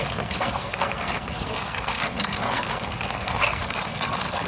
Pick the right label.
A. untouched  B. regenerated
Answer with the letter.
B